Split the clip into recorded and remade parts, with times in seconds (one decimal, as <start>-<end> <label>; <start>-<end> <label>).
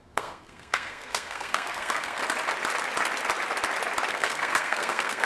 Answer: 0.0-2.2 remade; 2.2-4.1 recorded; 4.1-5.3 remade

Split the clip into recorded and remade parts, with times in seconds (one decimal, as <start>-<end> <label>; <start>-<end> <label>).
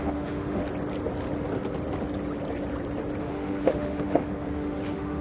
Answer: 0.0-0.6 remade; 0.6-3.2 recorded; 3.2-5.2 remade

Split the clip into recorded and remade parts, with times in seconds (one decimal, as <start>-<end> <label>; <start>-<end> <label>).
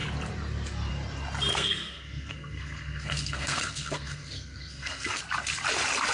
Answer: 0.0-1.5 recorded; 1.5-5.2 remade; 5.2-6.1 recorded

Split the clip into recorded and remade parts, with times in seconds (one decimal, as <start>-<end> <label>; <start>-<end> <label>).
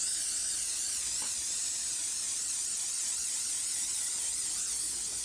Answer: 0.0-0.4 recorded; 0.4-3.5 remade; 3.5-5.2 recorded